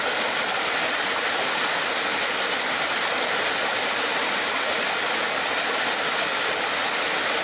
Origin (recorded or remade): recorded